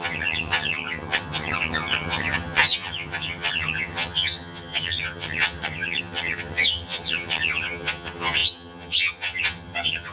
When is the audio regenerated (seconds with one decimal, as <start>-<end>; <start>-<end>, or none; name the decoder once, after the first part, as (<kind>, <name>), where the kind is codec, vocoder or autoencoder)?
0.0-10.1 (vocoder, HiFi-GAN)